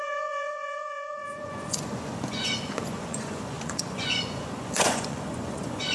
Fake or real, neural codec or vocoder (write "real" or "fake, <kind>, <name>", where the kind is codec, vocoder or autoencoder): fake, vocoder, Vocos